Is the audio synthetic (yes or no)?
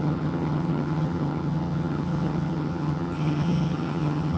yes